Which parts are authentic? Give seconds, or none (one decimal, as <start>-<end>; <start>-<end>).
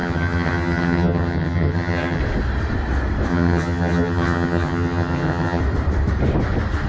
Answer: 2.2-3.3; 5.6-6.9